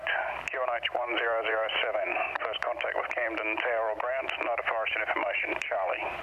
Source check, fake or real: fake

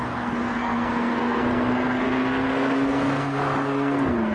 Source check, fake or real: fake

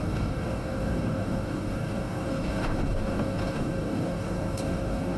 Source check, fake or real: fake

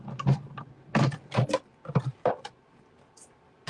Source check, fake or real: real